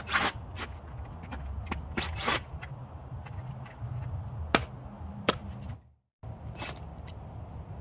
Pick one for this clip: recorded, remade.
recorded